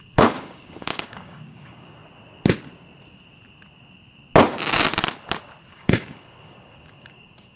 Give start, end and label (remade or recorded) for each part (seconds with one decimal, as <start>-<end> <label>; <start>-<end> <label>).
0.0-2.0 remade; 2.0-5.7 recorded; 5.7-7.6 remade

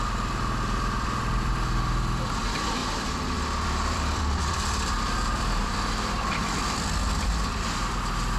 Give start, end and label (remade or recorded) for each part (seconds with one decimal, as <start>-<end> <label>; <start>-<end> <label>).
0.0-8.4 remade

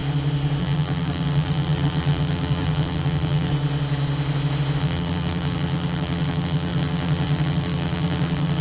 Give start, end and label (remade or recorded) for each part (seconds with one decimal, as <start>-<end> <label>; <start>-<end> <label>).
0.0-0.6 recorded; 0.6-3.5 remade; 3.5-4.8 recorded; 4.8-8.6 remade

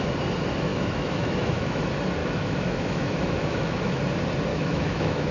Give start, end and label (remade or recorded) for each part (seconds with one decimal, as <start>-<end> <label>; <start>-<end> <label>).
0.0-0.7 recorded; 0.7-1.8 remade; 1.8-2.2 recorded; 2.2-4.0 remade; 4.0-4.5 recorded; 4.5-5.3 remade

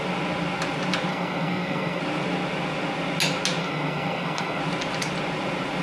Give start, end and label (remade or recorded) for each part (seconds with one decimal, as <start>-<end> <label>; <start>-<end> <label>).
0.0-1.1 recorded; 1.1-2.0 remade; 2.0-3.6 recorded; 3.6-4.6 remade; 4.6-5.8 recorded